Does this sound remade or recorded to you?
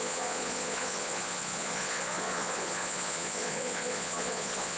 remade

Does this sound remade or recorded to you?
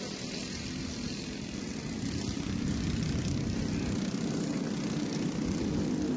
recorded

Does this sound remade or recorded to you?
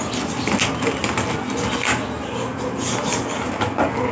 recorded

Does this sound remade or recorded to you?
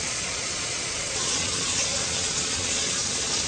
remade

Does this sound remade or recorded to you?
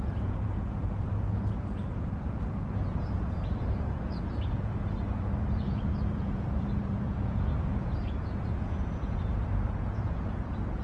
remade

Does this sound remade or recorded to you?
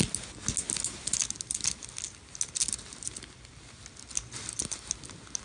recorded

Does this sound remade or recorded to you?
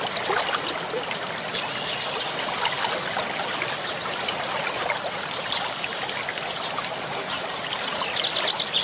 recorded